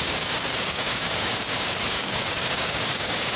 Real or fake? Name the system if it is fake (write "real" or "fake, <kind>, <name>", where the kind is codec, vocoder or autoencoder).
fake, codec, DAC